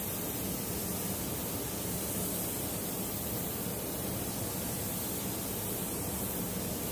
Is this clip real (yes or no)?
yes